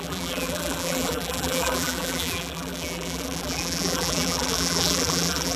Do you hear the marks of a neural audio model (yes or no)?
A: yes